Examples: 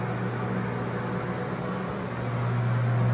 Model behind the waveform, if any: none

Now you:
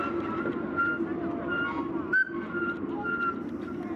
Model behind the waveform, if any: none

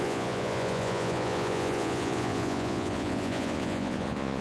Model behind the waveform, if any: vocoder, Vocos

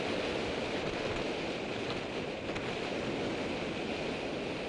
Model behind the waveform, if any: none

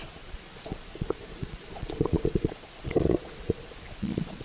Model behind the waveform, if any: vocoder, Vocos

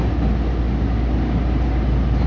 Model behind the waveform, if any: none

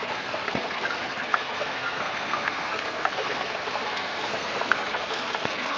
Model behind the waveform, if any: codec, SNAC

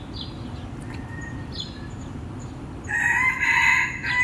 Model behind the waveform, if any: none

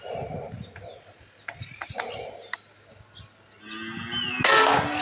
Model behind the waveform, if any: none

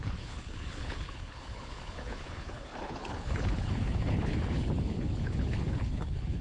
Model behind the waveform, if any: codec, HILCodec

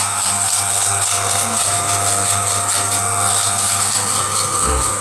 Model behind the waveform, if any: codec, SNAC